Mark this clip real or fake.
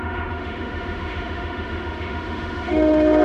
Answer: fake